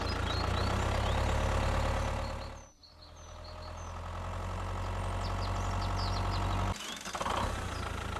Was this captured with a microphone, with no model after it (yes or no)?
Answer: yes